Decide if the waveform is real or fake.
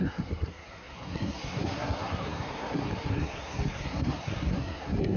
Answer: fake